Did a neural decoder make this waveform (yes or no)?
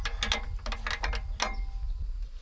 no